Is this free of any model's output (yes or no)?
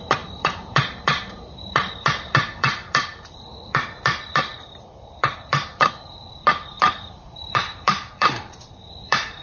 no